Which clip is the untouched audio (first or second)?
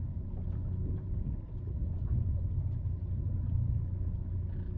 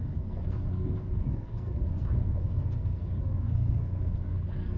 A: first